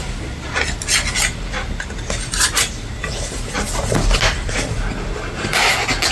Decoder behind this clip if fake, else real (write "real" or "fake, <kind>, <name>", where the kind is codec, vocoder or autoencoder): real